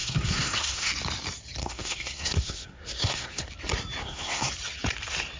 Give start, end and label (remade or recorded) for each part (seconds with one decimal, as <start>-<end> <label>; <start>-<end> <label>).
0.0-0.9 remade; 0.9-1.6 recorded; 1.6-3.4 remade; 3.4-4.0 recorded; 4.0-4.5 remade; 4.5-5.4 recorded